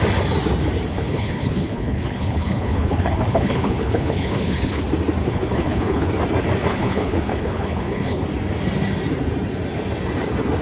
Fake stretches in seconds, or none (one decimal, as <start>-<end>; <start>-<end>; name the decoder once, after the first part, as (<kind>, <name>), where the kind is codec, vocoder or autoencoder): 0.9-4.8 (codec, HILCodec); 5.2-6.1; 6.7-8.2